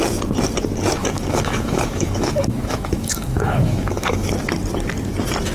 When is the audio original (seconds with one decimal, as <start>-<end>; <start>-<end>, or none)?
0.0-1.0; 4.3-5.5

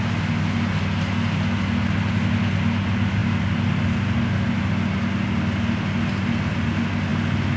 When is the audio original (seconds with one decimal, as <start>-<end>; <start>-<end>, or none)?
0.0-7.6